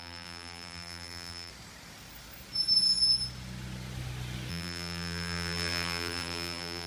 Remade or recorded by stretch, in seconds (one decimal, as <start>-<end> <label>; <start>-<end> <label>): 0.0-1.5 remade; 1.5-4.5 recorded; 4.5-6.9 remade